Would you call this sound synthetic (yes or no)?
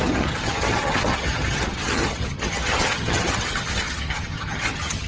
yes